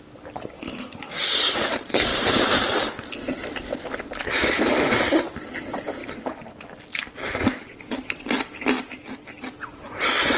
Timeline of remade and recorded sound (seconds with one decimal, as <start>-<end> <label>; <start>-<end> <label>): 0.0-10.4 recorded